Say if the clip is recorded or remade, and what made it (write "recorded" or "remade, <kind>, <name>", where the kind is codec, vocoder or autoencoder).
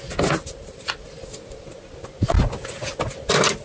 recorded